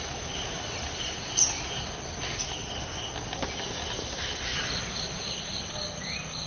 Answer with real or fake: fake